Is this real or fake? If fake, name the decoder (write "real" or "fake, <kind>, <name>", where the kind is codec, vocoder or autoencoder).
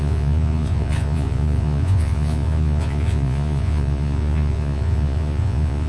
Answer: fake, vocoder, Vocos